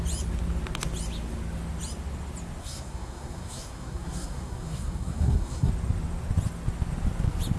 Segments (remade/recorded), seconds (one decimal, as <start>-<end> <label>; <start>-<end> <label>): 0.0-2.6 recorded; 2.6-5.7 remade; 5.7-7.6 recorded